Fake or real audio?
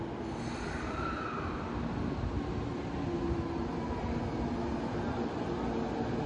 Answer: real